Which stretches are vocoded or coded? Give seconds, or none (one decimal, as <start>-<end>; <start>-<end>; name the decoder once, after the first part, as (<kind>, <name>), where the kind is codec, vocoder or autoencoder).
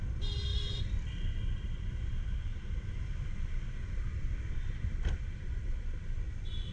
none